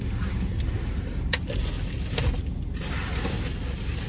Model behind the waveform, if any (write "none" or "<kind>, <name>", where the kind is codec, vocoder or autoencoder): none